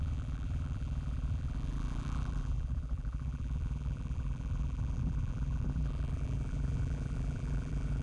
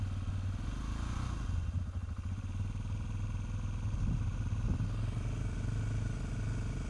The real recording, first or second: second